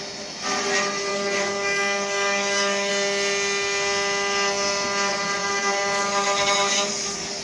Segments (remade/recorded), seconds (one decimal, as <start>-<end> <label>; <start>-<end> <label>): 0.0-1.1 recorded; 1.1-2.9 remade; 2.9-5.4 recorded; 5.4-7.4 remade